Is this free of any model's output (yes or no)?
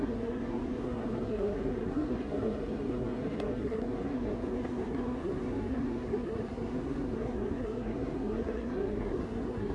no